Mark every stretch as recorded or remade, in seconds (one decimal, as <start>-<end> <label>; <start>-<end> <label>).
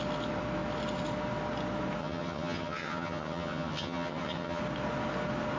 0.0-2.0 recorded; 2.0-4.6 remade; 4.6-5.6 recorded